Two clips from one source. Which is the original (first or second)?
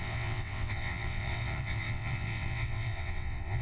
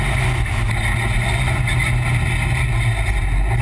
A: second